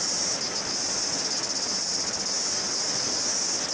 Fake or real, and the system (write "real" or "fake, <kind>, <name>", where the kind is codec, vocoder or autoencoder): real